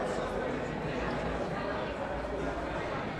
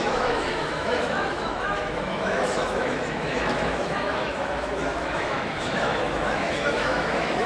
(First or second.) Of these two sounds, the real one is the first